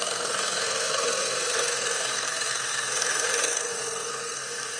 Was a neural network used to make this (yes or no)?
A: yes